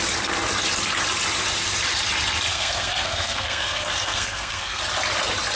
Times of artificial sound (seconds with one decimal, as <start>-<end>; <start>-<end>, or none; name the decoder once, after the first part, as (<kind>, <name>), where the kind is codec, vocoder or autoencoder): 2.5-4.8 (codec, SNAC)